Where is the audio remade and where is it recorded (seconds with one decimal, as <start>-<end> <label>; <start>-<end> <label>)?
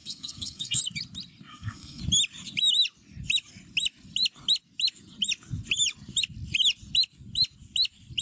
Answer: 0.0-0.8 remade; 0.8-1.5 recorded; 1.5-2.0 remade; 2.0-8.2 recorded